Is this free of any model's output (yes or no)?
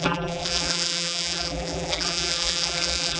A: no